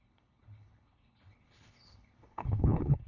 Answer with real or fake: fake